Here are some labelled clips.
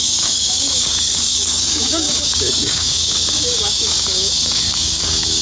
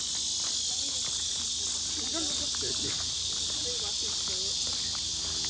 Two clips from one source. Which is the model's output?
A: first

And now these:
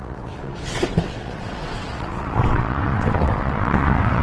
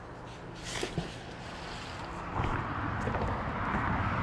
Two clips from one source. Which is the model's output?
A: first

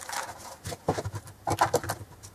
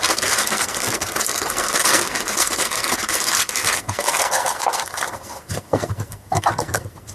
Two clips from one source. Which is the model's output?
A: second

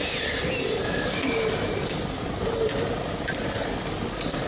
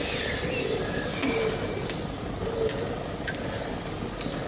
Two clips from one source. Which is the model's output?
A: first